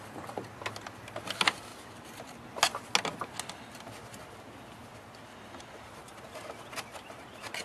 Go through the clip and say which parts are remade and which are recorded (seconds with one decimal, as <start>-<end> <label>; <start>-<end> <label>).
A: 0.0-7.6 recorded